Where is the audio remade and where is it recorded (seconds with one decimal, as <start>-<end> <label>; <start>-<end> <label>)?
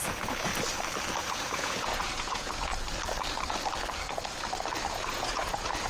0.0-0.5 remade; 0.5-1.2 recorded; 1.2-2.7 remade; 2.7-4.9 recorded; 4.9-5.9 remade